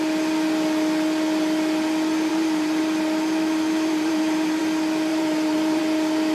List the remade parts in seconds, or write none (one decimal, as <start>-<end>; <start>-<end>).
2.3-2.8; 3.9-4.6; 5.1-5.8